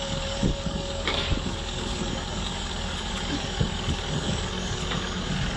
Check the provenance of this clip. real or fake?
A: fake